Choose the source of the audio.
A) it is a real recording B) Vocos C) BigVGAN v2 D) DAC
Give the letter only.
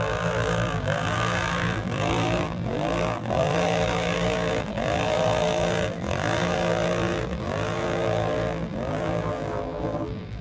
C